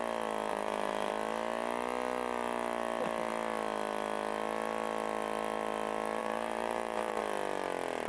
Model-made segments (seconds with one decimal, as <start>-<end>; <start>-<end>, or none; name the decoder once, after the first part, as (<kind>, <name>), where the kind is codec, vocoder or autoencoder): 0.5-1.1 (vocoder, BigVGAN v2); 6.2-7.2